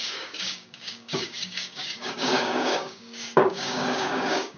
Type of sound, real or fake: fake